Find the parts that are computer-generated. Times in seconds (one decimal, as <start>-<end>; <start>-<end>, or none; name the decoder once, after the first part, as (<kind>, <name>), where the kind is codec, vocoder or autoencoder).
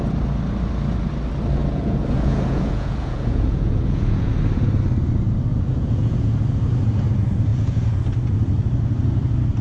1.6-4.3 (vocoder, Vocos); 5.5-6.3; 7.5-8.0